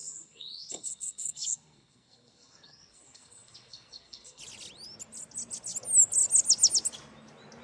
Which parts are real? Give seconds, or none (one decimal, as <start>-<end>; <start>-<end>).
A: 4.4-7.6